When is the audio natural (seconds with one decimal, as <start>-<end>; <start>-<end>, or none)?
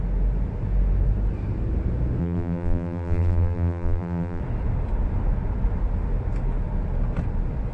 0.0-2.2; 4.4-7.7